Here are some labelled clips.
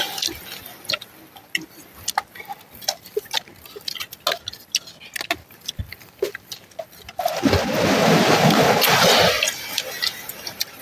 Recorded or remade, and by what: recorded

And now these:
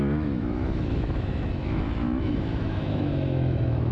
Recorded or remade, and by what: remade, autoencoder, DAC-VAE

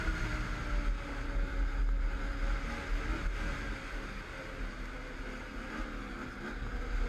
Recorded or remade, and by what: recorded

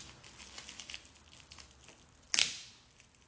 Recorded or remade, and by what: recorded